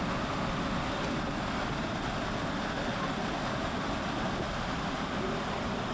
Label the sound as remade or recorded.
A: recorded